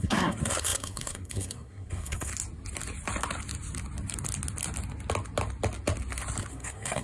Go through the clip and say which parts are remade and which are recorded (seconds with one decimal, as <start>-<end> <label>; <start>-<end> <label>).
0.0-2.3 remade; 2.3-6.5 recorded; 6.5-7.0 remade